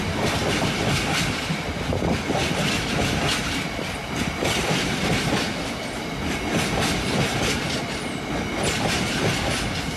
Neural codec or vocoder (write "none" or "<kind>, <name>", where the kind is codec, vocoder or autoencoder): vocoder, BigVGAN v2